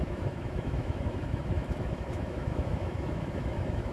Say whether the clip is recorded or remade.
remade